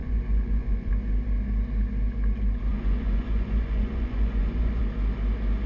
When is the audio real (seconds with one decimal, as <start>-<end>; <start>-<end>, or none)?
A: 0.9-2.7; 4.8-5.7